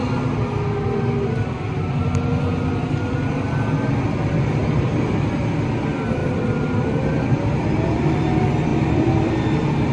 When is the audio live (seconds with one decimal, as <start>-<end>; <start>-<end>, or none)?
0.0-4.6; 5.1-6.2; 7.4-8.7; 9.3-9.9